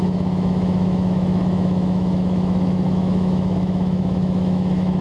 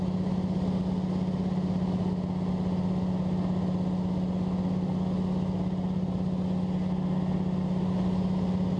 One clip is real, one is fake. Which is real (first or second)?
second